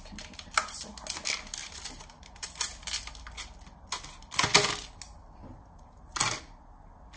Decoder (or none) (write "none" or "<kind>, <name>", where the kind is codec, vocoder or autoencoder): none